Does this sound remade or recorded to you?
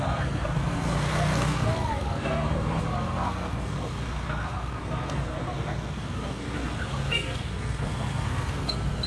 remade